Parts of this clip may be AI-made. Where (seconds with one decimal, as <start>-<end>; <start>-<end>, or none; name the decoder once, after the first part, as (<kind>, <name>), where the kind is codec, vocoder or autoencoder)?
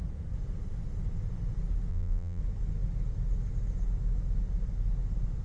1.9-2.4 (vocoder, BigVGAN v2)